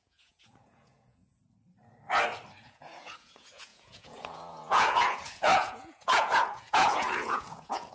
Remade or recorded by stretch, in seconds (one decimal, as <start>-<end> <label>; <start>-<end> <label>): 0.0-1.4 remade; 1.4-2.6 recorded; 2.6-7.9 remade

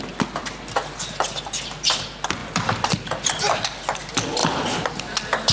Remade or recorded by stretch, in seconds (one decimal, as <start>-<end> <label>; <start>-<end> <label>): 0.0-2.4 recorded; 2.4-3.5 remade; 3.5-4.4 recorded; 4.4-5.0 remade; 5.0-5.5 recorded

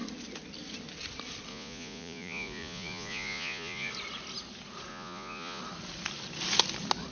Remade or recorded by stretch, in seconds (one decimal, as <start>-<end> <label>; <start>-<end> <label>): 0.0-1.5 recorded; 1.5-3.9 remade; 3.9-4.9 recorded; 4.9-5.6 remade; 5.6-7.1 recorded

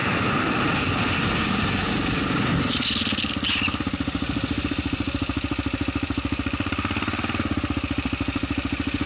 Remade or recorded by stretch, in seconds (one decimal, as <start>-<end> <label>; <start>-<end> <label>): 0.0-9.1 remade

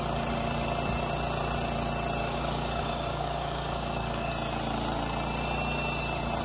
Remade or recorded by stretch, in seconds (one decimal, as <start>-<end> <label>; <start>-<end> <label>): 0.0-2.2 recorded; 2.2-4.3 remade; 4.3-6.4 recorded

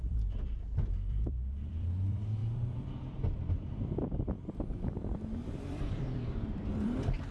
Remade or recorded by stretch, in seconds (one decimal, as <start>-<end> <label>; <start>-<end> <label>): 0.0-7.3 remade

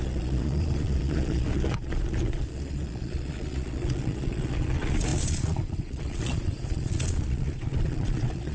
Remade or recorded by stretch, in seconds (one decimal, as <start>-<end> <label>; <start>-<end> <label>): 0.0-8.5 remade

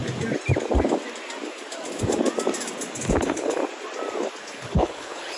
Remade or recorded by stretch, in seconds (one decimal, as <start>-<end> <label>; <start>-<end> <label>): 0.0-3.2 recorded; 3.2-3.6 remade; 3.6-4.4 recorded; 4.4-5.4 remade